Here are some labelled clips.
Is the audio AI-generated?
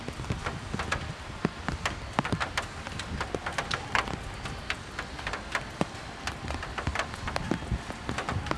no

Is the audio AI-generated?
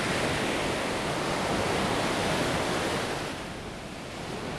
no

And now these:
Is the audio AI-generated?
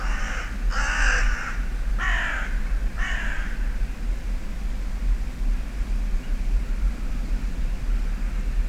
no